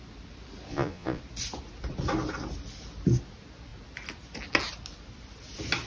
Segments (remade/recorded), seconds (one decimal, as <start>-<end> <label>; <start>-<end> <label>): 0.0-0.7 recorded; 0.7-1.2 remade; 1.2-5.9 recorded